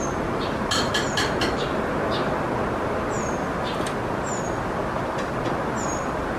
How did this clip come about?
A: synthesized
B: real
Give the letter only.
B